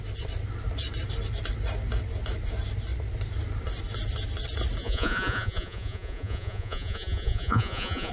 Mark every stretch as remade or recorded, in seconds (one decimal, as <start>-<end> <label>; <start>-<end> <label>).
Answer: 0.0-4.8 recorded; 4.8-8.1 remade